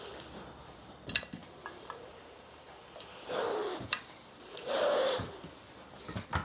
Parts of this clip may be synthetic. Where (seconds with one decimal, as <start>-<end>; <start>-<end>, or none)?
1.4-2.7; 3.6-5.3